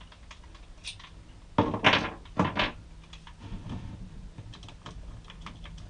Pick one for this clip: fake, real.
real